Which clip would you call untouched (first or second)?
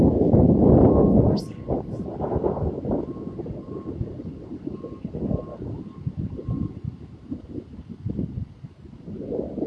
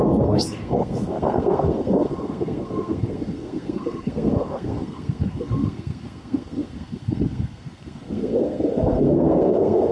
first